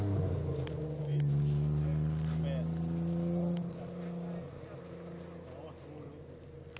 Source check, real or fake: real